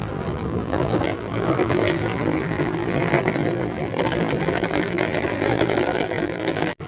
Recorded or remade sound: remade